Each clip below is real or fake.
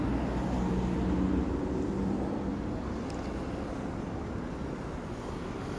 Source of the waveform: real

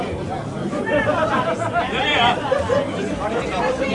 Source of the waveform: fake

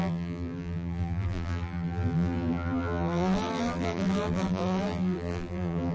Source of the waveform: fake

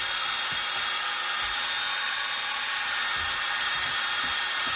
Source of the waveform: fake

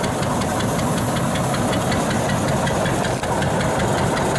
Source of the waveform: real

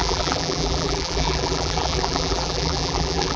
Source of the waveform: fake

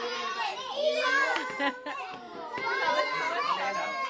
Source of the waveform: real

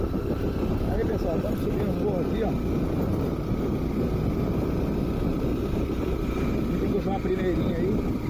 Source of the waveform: real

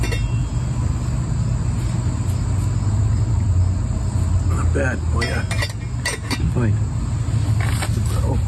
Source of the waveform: real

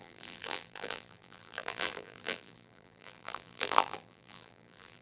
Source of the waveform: fake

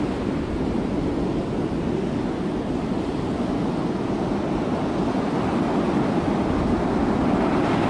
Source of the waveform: real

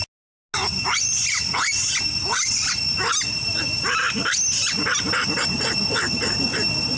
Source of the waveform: real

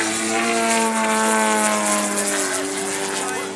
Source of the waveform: real